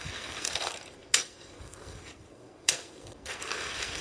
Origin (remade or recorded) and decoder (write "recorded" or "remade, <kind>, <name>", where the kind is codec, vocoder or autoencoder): remade, codec, SNAC